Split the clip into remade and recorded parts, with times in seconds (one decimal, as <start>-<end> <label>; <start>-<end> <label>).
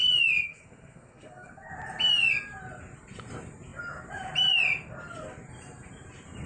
0.0-0.4 recorded; 0.4-1.7 remade; 1.7-6.5 recorded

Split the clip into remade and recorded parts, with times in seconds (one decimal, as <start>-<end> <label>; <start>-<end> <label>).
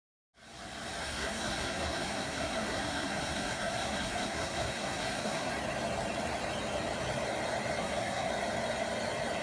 0.0-1.0 recorded; 1.0-5.5 remade; 5.5-7.8 recorded; 7.8-8.3 remade; 8.3-9.4 recorded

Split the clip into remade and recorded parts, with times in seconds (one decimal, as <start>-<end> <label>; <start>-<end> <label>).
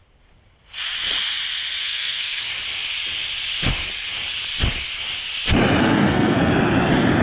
0.0-1.8 recorded; 1.8-2.4 remade; 2.4-5.8 recorded; 5.8-6.5 remade; 6.5-7.2 recorded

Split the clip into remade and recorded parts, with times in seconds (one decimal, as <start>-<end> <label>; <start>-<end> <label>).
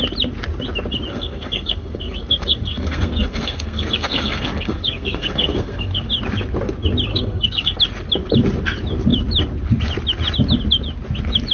0.0-1.1 recorded; 1.1-6.1 remade; 6.1-7.1 recorded; 7.1-7.8 remade; 7.8-11.5 recorded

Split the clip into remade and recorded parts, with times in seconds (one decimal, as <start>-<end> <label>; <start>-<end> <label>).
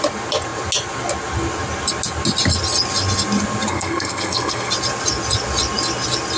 0.0-3.7 recorded; 3.7-4.7 remade; 4.7-6.4 recorded